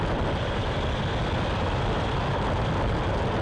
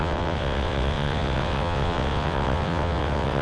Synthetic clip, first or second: second